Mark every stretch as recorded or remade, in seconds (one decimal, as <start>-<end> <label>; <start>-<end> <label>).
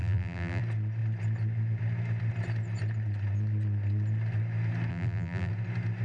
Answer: 0.0-0.6 remade; 0.6-4.9 recorded; 4.9-5.5 remade; 5.5-6.0 recorded